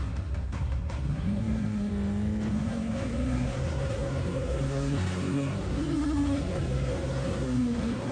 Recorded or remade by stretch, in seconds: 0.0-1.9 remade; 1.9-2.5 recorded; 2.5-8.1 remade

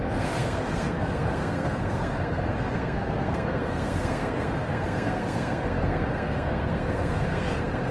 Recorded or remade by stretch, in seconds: 0.0-7.9 remade

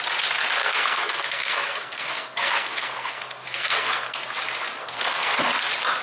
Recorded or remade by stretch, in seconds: 0.0-0.6 recorded; 0.6-4.2 remade; 4.2-4.8 recorded; 4.8-5.4 remade; 5.4-6.0 recorded

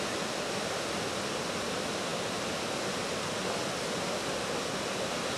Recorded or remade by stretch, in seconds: 0.0-5.4 recorded

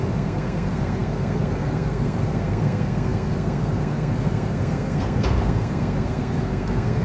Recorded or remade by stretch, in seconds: 0.0-7.0 remade